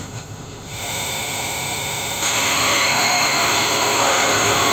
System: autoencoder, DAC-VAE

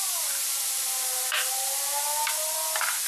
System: none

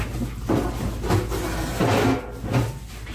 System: none